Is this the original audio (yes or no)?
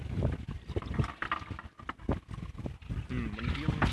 yes